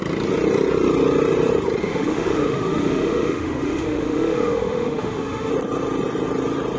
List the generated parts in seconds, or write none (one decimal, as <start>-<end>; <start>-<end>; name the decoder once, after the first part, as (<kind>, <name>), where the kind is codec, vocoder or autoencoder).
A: 1.8-5.5 (autoencoder, DAC-VAE)